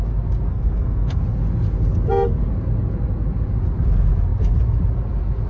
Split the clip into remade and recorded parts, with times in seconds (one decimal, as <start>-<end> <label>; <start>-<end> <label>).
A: 0.0-0.5 recorded; 0.5-1.2 remade; 1.2-5.5 recorded